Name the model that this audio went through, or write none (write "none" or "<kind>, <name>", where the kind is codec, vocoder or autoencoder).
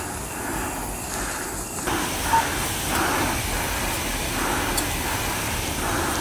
none